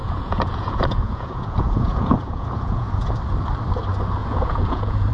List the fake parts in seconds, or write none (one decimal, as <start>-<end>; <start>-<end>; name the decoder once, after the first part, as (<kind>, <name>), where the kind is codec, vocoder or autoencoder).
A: 0.0-3.1 (vocoder, Vocos); 4.2-5.1